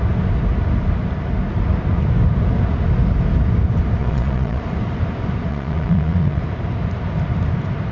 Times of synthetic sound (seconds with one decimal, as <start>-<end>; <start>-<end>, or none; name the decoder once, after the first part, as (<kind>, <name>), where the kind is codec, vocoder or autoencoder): 4.0-4.6 (vocoder, Vocos); 5.5-6.4